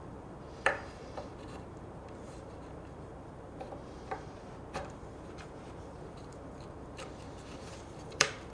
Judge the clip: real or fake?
fake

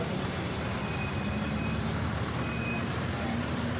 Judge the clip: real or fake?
fake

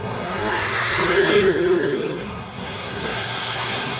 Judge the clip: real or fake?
fake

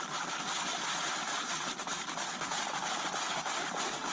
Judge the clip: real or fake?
real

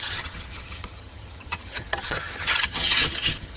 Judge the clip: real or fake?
fake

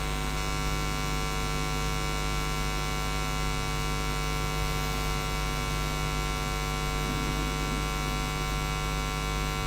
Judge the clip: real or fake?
real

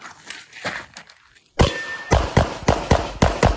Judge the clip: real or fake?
real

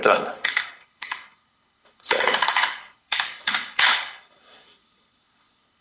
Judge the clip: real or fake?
fake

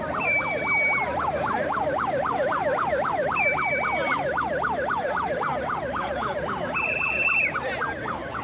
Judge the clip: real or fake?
fake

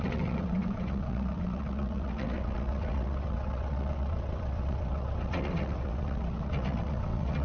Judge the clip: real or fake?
fake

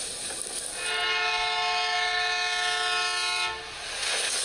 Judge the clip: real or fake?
real